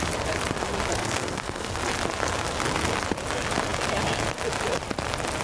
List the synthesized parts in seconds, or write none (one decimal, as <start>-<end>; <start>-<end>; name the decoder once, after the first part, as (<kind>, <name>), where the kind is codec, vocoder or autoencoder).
1.0-1.8 (codec, SNAC)